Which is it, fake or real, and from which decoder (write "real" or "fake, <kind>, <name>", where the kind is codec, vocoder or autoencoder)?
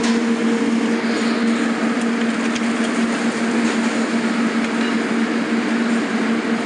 real